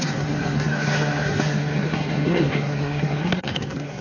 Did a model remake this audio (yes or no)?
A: yes